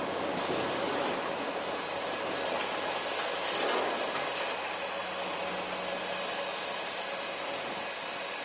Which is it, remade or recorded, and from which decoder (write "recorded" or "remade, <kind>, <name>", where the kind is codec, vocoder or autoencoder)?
recorded